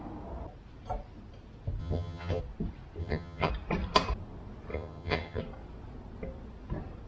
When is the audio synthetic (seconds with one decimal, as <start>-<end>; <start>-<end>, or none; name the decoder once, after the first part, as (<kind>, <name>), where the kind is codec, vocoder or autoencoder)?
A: 1.8-2.4 (vocoder, HiFi-GAN); 3.0-3.5; 4.7-5.4